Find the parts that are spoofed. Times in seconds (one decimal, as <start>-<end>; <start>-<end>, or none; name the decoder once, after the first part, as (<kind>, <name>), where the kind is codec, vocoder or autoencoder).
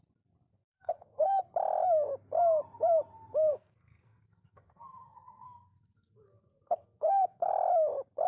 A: 0.5-1.4 (codec, SNAC); 3.5-7.5